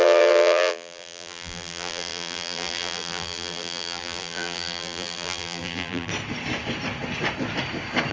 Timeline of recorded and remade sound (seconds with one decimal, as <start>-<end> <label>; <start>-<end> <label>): 0.0-6.1 remade; 6.1-8.1 recorded